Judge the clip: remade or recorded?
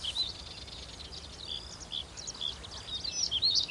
recorded